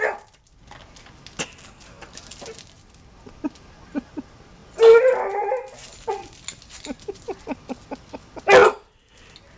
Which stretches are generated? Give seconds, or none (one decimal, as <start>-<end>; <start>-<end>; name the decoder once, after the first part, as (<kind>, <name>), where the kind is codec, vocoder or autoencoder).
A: none

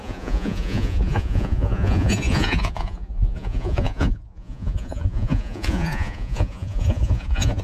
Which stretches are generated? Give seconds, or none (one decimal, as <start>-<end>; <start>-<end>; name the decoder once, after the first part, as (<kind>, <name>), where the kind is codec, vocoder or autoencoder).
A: 0.0-7.6 (vocoder, Vocos)

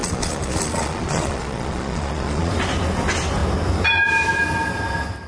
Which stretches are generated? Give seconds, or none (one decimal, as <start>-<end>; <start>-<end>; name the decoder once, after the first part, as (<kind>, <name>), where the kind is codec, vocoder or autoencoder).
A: 0.0-2.5 (vocoder, Vocos)

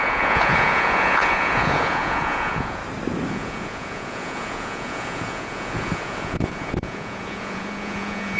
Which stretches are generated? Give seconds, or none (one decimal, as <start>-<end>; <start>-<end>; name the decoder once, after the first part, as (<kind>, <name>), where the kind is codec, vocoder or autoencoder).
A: 0.0-2.8 (vocoder, Vocos); 3.3-8.4

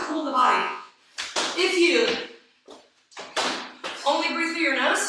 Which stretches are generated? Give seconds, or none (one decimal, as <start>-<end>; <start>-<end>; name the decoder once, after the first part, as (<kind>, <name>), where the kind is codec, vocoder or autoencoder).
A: 0.0-0.9 (vocoder, Vocos)

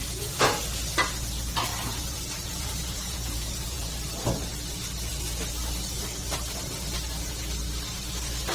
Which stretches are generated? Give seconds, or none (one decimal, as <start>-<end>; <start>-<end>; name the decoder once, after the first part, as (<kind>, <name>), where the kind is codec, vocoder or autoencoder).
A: 1.7-3.9 (vocoder, Vocos)

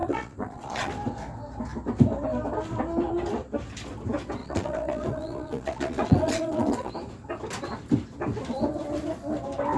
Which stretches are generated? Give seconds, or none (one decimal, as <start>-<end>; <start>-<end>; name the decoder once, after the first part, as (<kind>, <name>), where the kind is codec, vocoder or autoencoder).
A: 0.0-0.9 (vocoder, Vocos); 4.4-6.9